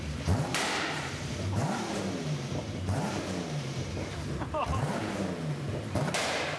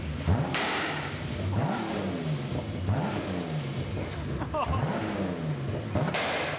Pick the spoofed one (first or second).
first